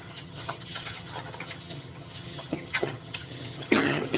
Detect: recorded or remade remade